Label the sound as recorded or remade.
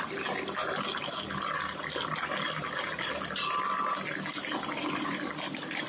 recorded